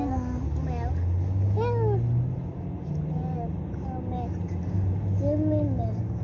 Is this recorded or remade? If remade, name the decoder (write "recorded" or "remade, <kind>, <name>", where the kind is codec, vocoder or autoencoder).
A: recorded